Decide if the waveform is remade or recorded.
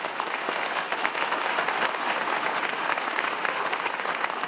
remade